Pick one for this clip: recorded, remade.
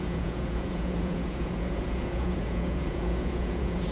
remade